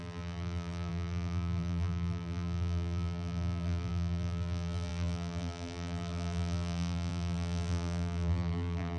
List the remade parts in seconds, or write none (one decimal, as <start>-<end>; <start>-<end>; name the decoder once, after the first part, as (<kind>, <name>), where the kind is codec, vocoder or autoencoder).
0.0-9.0 (vocoder, BigVGAN v2)